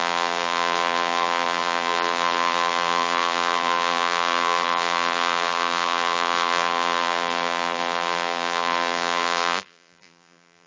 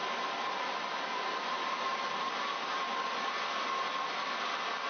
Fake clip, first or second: first